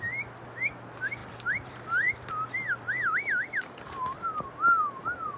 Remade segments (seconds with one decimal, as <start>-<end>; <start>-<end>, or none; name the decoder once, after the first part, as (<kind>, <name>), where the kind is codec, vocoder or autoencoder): 1.2-4.4 (vocoder, BigVGAN v2)